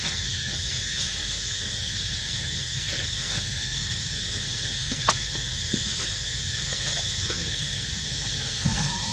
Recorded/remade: remade